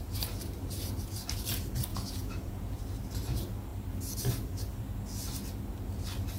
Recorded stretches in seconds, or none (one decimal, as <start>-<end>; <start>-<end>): 0.0-1.9; 2.8-6.4